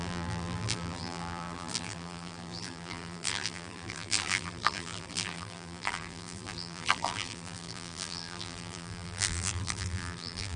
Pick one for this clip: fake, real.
fake